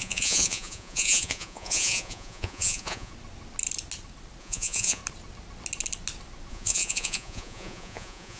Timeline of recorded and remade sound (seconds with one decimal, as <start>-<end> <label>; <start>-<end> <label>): 0.0-3.1 remade; 3.1-4.4 recorded; 4.4-5.0 remade; 5.0-6.5 recorded; 6.5-8.4 remade